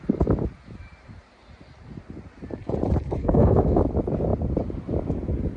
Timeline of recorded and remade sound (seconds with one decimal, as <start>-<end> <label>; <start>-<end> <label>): 0.0-3.2 recorded; 3.2-3.8 remade; 3.8-5.6 recorded